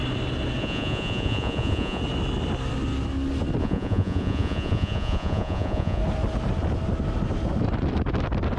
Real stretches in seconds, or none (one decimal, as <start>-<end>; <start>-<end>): 0.0-0.6; 2.0-3.6; 6.0-8.6